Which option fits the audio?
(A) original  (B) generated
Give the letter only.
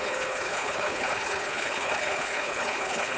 B